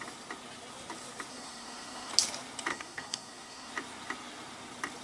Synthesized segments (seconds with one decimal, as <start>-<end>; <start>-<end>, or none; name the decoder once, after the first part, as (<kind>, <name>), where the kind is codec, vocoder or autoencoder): 1.3-2.1 (codec, SNAC); 2.7-3.7